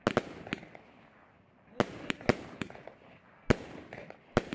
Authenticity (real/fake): real